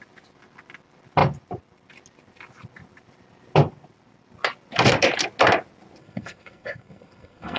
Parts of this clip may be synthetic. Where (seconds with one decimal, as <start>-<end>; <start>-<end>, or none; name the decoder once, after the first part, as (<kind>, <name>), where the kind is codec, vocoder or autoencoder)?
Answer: 6.0-7.6 (codec, SNAC)

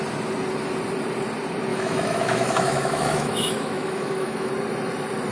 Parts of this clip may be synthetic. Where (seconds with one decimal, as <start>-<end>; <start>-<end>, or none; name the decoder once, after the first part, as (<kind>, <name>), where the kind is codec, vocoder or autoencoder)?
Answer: 1.7-4.5 (autoencoder, DAC-VAE)

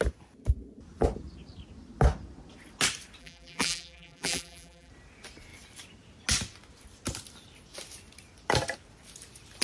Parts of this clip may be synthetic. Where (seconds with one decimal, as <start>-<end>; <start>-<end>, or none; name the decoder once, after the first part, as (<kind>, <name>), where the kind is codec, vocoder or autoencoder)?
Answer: 3.2-4.9 (vocoder, BigVGAN v2)